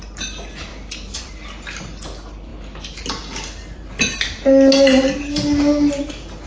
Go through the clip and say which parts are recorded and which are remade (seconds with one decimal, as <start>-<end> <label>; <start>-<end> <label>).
0.0-0.7 recorded; 0.7-1.3 remade; 1.3-6.5 recorded